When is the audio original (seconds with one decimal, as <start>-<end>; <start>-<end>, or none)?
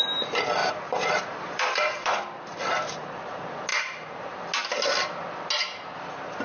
0.0-0.6; 2.2-3.7; 4.4-6.4